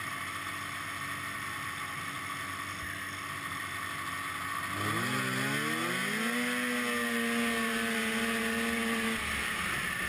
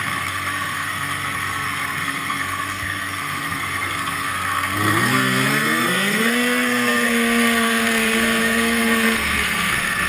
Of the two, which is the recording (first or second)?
first